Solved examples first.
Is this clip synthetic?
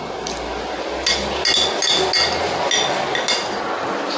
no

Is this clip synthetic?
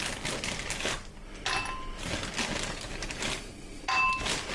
no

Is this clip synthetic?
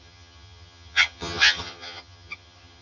yes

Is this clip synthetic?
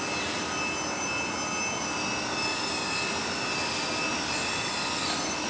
no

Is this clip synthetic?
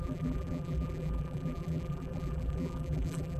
yes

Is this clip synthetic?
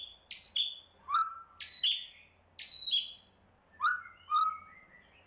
no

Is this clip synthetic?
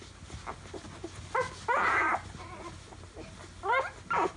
no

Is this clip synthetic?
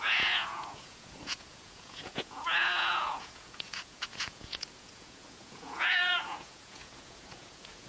yes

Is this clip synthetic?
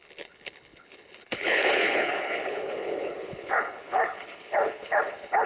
yes